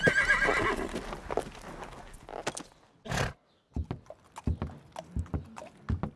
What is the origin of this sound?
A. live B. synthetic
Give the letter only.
A